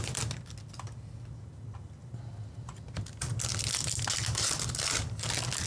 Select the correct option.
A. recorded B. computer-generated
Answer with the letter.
A